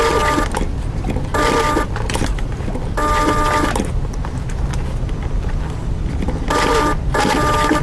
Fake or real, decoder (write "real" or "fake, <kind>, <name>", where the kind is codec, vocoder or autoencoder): real